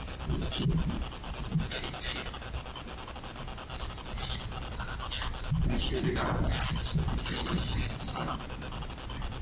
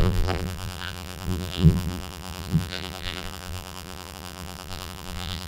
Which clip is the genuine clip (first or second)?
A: first